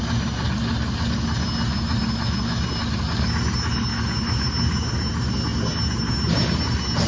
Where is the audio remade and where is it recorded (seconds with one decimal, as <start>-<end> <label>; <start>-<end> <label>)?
0.0-7.1 recorded